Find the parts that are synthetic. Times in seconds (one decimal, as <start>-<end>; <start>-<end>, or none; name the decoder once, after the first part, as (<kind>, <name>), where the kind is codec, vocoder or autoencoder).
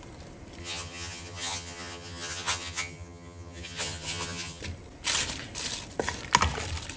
0.6-4.6 (vocoder, HiFi-GAN)